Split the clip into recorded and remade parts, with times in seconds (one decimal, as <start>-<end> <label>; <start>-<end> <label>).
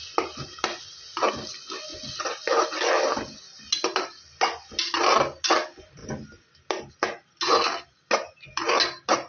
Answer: 0.0-9.3 recorded